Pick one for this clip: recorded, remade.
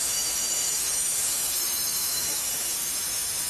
remade